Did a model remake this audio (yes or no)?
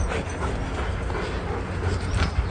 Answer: no